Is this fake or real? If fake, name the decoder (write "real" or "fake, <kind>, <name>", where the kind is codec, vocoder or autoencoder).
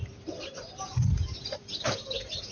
fake, vocoder, BigVGAN v2